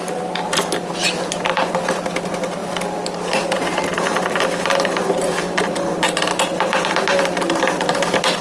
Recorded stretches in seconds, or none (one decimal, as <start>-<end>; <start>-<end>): 0.0-8.4